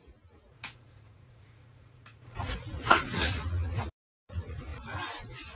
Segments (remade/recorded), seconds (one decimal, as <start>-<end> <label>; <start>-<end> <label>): 0.0-5.6 remade